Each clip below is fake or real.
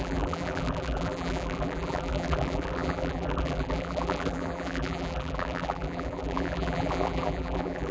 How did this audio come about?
fake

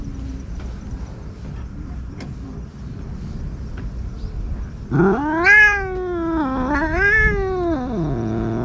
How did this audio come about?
real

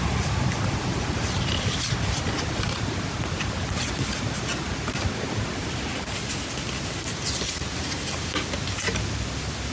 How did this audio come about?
real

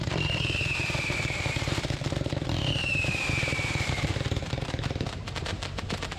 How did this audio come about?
fake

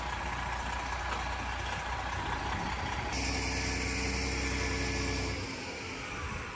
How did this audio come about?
real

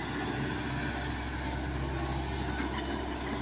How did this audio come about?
real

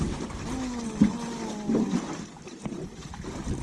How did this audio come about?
real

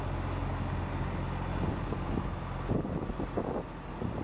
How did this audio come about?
real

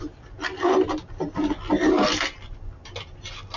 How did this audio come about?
real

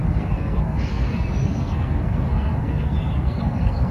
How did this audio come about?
fake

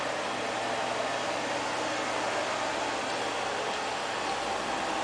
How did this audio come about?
real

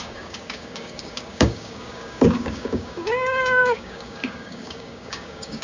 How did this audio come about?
fake